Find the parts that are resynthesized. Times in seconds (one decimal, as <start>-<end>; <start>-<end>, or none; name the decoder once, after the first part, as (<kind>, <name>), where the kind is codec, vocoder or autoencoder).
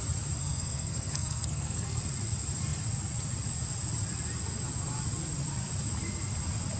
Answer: 0.4-2.0 (codec, SNAC)